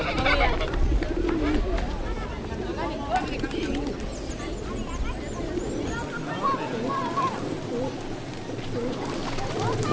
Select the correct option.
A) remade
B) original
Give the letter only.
B